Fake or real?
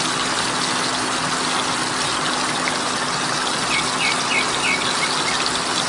real